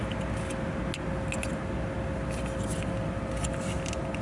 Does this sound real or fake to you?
real